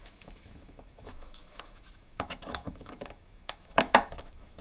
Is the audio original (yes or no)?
no